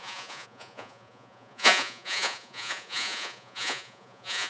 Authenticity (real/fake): fake